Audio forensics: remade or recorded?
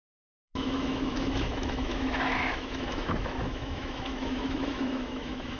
remade